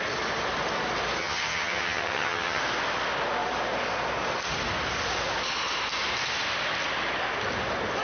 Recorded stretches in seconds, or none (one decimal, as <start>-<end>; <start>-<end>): 0.0-1.2; 2.6-8.0